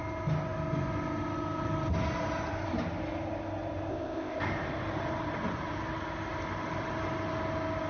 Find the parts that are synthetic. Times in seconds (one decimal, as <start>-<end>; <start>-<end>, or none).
3.9-4.4